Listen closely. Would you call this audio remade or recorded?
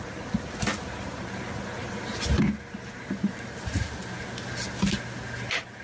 recorded